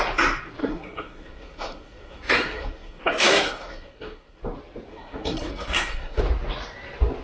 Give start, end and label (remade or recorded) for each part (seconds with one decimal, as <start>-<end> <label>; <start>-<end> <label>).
0.0-0.6 recorded; 0.6-4.4 remade; 4.4-4.9 recorded; 4.9-6.2 remade; 6.2-7.2 recorded